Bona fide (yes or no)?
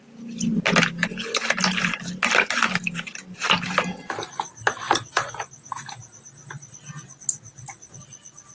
yes